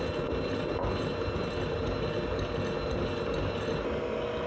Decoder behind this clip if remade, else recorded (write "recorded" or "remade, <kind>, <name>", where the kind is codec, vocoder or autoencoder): recorded